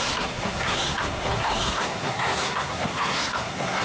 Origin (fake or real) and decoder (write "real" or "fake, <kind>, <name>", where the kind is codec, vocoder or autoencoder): fake, codec, SNAC